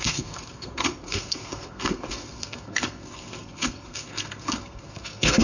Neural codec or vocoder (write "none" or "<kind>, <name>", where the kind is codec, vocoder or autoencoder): codec, SNAC